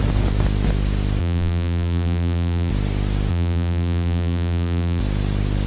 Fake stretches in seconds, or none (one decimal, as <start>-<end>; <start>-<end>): 1.2-2.7; 3.3-5.0